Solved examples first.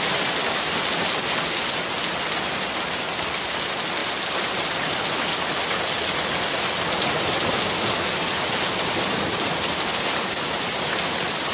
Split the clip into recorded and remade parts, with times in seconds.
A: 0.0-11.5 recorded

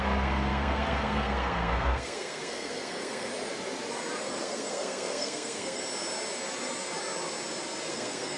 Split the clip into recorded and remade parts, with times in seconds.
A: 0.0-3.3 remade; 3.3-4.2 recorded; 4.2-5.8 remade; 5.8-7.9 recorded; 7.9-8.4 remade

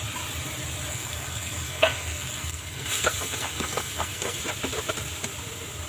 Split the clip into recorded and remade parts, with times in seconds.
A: 0.0-0.9 recorded; 0.9-4.4 remade; 4.4-5.9 recorded

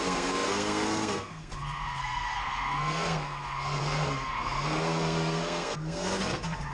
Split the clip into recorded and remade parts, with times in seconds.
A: 0.0-6.7 remade

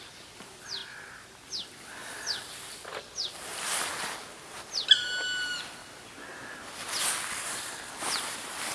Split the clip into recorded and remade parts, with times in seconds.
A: 0.0-8.7 recorded